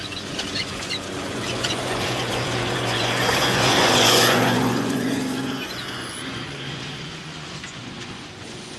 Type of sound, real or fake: fake